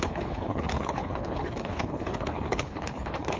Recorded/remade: remade